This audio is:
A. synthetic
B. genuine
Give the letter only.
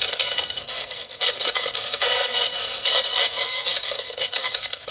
A